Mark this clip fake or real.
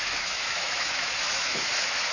fake